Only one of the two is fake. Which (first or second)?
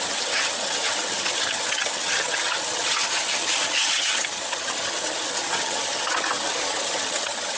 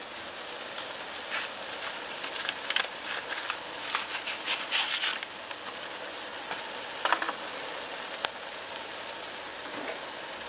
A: first